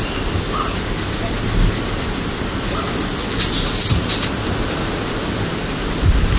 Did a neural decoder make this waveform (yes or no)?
no